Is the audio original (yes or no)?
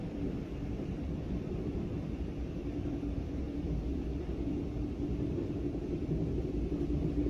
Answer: no